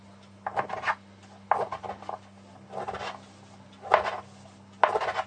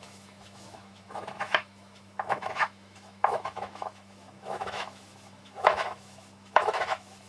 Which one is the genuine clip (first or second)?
first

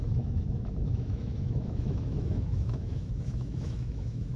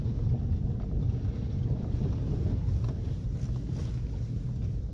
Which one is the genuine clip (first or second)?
second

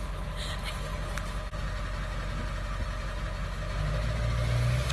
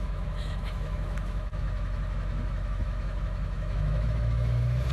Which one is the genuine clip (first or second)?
first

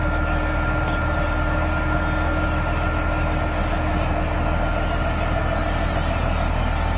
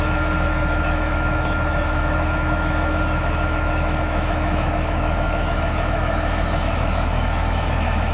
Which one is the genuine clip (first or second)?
first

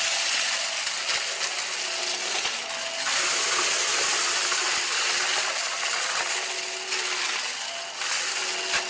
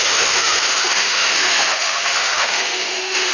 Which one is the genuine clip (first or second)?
first